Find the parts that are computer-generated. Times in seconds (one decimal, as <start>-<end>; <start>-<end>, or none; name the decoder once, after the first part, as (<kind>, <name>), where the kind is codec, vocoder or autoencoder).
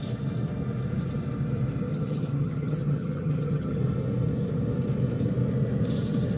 1.9-3.8 (vocoder, HiFi-GAN)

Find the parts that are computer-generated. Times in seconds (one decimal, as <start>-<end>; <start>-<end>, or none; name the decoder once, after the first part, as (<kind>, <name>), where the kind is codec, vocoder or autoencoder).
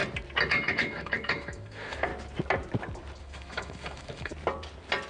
0.5-2.1 (autoencoder, DAC-VAE); 3.2-4.3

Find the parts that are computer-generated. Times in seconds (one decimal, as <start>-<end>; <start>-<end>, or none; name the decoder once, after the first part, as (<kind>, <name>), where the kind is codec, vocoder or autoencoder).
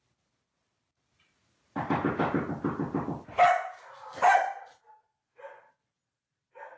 none